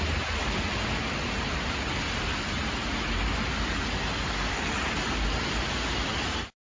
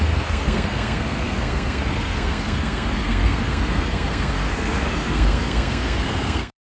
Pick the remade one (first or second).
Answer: second